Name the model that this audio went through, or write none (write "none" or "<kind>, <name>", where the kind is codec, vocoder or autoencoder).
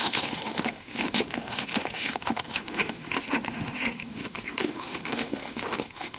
autoencoder, DAC-VAE